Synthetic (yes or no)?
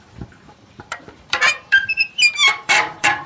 yes